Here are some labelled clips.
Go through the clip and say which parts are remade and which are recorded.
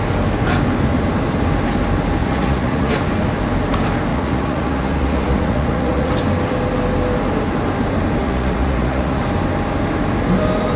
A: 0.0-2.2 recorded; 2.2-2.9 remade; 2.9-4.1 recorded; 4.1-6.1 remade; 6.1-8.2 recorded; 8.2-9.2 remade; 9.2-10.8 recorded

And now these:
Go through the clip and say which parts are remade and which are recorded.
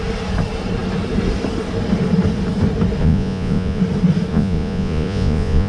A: 0.0-3.0 recorded; 3.0-3.8 remade; 3.8-4.3 recorded; 4.3-5.7 remade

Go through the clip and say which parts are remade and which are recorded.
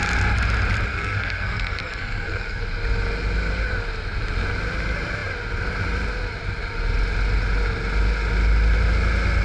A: 0.0-0.9 recorded; 0.9-2.6 remade; 2.6-9.4 recorded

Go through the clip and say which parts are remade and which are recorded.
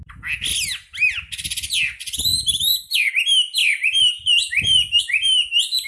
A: 0.0-2.3 recorded; 2.3-3.1 remade; 3.1-3.6 recorded; 3.6-5.0 remade; 5.0-5.9 recorded